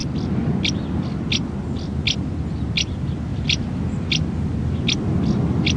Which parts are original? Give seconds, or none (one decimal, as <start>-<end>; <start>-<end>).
0.0-5.8